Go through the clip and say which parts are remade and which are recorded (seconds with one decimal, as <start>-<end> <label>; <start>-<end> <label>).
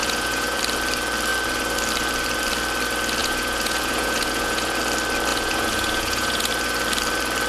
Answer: 0.0-0.6 remade; 0.6-3.2 recorded; 3.2-4.8 remade; 4.8-5.3 recorded; 5.3-6.5 remade; 6.5-7.5 recorded